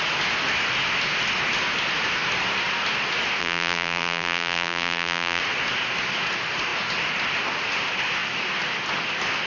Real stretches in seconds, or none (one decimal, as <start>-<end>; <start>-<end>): 0.0-3.4; 5.4-9.5